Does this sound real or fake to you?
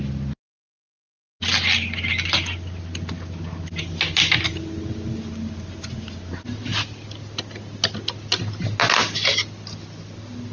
real